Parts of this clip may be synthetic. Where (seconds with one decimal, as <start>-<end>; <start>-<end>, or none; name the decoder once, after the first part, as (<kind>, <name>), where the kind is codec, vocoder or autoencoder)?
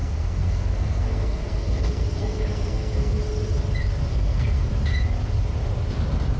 0.0-3.2 (codec, SNAC); 4.1-4.7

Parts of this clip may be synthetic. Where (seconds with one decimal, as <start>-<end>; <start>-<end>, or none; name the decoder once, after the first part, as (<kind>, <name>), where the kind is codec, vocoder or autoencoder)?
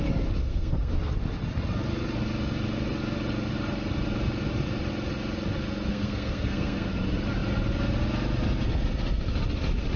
0.4-0.9 (codec, SNAC); 5.9-6.9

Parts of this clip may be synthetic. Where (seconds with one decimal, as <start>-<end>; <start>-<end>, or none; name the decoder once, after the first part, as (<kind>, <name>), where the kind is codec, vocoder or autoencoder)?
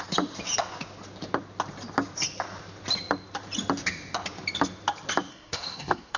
5.3-6.2 (codec, SNAC)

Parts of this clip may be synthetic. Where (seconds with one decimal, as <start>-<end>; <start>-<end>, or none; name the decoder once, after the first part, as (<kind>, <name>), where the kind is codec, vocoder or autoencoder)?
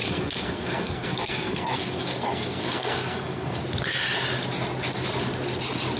0.0-3.6 (codec, SNAC)